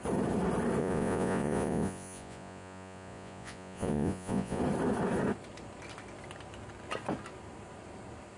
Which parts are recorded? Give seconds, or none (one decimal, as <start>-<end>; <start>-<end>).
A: 0.0-0.8; 4.6-8.4